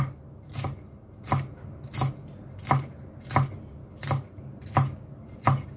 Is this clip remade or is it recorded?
recorded